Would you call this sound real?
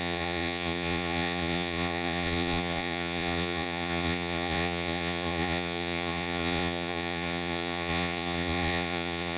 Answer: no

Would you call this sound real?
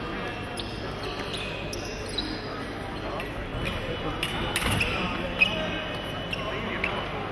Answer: yes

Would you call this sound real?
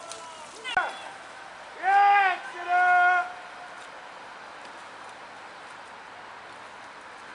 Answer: yes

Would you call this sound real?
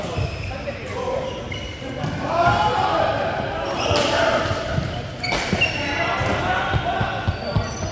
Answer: yes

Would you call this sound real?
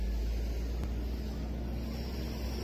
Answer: yes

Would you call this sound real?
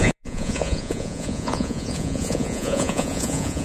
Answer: no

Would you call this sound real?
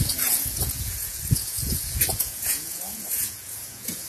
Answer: no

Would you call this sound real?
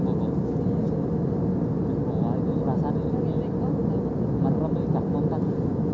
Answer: yes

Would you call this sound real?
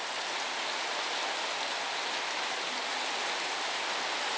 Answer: yes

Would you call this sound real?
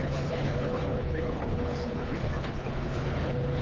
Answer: no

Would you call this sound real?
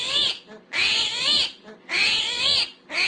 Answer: yes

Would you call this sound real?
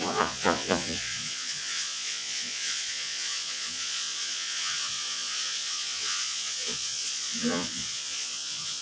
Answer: no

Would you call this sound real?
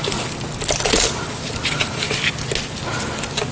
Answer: yes